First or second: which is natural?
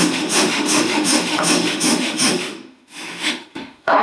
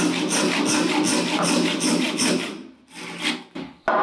second